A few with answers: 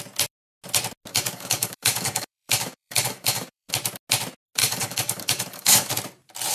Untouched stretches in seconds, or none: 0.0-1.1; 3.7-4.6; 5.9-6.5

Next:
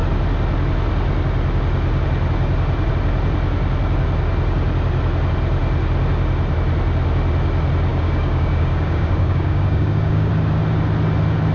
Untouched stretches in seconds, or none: 0.0-7.9; 10.3-11.5

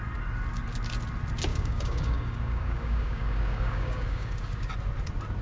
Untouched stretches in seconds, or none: 0.0-1.5; 4.7-5.4

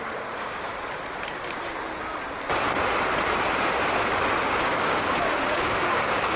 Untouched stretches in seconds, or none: 0.7-4.5